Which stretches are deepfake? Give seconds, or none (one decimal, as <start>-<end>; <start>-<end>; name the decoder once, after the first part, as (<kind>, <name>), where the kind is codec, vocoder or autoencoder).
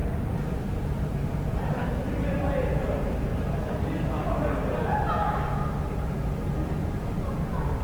0.0-1.9 (vocoder, BigVGAN v2); 3.3-6.9